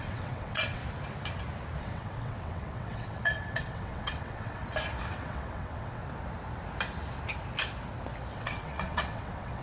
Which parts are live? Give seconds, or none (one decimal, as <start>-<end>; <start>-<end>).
0.8-1.8; 4.6-5.1; 6.0-8.3